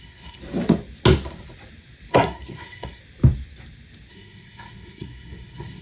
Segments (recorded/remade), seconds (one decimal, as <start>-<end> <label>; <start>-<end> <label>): 0.0-0.4 remade; 0.4-2.1 recorded; 2.1-3.0 remade; 3.0-4.1 recorded; 4.1-5.8 remade